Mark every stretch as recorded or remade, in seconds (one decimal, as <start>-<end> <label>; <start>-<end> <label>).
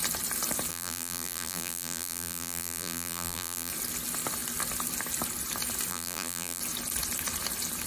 0.0-0.7 recorded; 0.7-3.7 remade; 3.7-5.9 recorded; 5.9-6.6 remade; 6.6-7.9 recorded